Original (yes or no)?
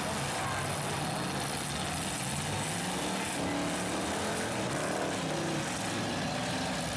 yes